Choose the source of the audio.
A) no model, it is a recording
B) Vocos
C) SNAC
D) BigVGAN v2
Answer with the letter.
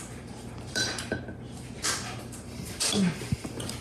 D